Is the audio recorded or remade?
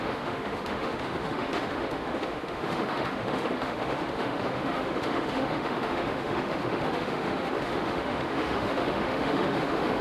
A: remade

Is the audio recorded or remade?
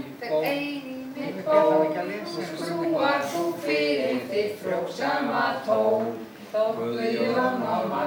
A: recorded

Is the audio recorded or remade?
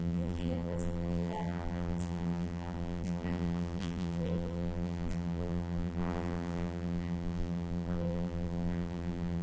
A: remade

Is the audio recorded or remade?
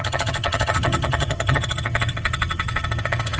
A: remade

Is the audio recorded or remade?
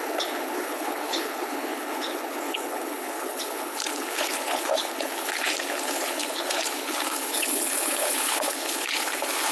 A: remade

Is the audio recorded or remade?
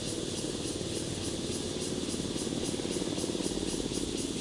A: recorded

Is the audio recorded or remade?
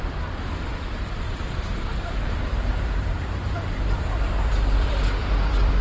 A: remade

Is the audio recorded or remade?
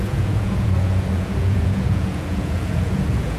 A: remade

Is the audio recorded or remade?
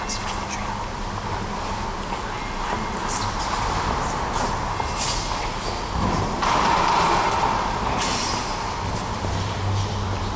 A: recorded